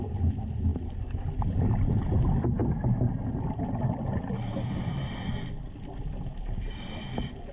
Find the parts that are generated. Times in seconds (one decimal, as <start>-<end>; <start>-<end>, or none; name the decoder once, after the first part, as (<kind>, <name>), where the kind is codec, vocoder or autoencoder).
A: 0.7-1.2 (vocoder, BigVGAN v2)